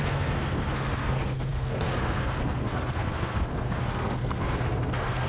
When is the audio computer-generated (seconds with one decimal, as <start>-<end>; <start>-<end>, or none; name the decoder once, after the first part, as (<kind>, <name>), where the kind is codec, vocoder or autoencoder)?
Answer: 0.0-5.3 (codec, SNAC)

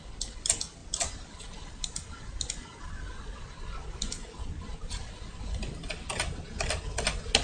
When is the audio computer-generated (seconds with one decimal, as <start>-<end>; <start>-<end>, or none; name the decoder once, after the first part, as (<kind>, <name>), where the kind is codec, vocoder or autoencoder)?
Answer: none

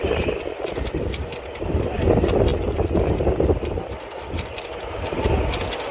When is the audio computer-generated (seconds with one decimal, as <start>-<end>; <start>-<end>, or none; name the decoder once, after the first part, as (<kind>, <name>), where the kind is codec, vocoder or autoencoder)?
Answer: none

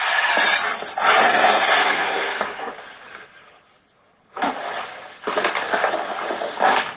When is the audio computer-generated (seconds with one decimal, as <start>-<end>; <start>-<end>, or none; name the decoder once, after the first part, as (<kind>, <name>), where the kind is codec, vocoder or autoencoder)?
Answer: 1.2-2.7 (codec, SNAC)

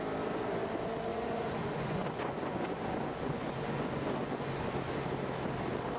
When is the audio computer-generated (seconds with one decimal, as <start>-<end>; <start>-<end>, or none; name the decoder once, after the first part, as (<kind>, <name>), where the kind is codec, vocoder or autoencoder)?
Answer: 1.1-4.7 (vocoder, Vocos)

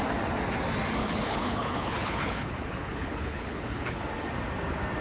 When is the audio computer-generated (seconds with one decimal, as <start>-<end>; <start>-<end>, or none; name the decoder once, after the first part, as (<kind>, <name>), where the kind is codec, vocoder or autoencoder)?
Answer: 1.0-4.0 (codec, HILCodec)